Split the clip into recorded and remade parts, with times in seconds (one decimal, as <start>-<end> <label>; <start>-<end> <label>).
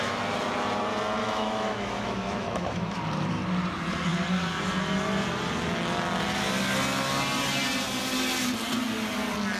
0.0-1.2 recorded; 1.2-3.0 remade; 3.0-9.6 recorded